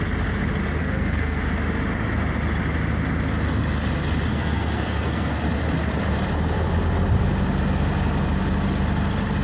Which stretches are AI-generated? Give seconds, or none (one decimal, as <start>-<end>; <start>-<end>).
0.8-1.4; 4.3-5.3